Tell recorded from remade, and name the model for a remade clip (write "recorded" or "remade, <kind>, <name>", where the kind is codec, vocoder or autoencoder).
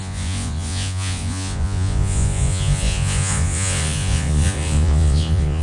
remade, vocoder, Vocos